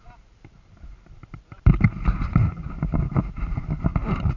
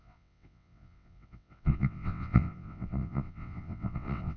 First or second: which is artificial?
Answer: second